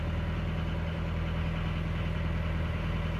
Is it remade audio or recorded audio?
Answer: recorded